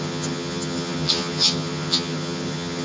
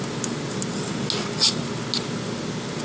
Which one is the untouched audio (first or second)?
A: second